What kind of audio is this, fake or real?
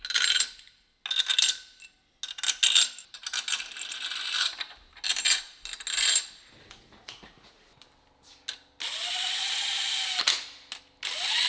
real